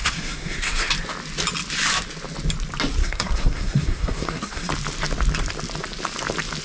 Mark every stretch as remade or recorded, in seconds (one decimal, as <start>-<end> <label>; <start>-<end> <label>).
0.0-0.9 remade; 0.9-3.0 recorded; 3.0-4.7 remade; 4.7-6.6 recorded